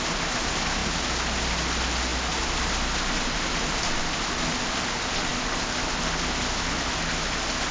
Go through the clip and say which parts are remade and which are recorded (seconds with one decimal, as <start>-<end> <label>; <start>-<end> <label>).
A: 0.0-7.7 recorded